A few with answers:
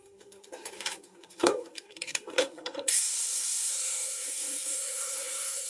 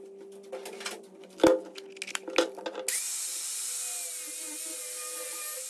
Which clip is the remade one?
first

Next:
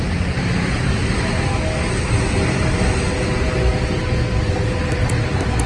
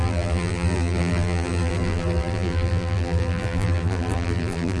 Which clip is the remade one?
second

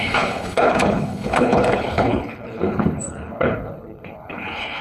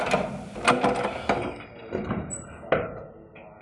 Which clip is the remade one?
first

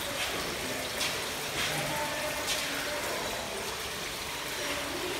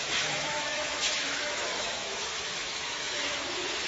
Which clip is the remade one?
second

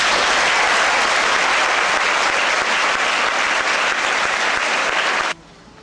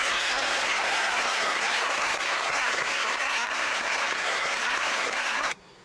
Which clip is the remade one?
second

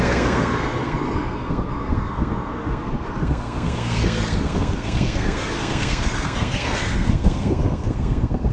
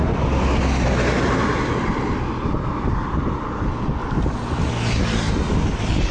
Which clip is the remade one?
first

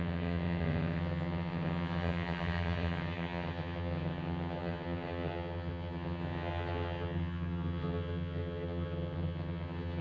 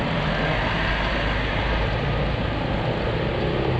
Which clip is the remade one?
first